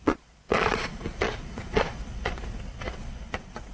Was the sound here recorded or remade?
remade